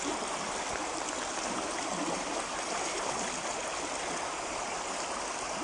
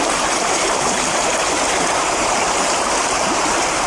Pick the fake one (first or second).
second